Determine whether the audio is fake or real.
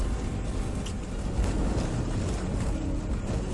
real